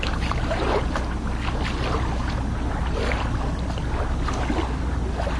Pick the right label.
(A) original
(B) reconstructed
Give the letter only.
A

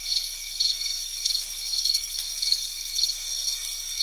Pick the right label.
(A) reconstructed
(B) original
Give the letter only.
A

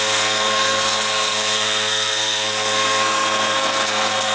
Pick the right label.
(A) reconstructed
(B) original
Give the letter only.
A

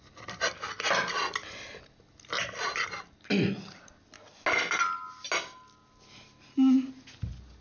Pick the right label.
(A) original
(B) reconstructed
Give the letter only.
A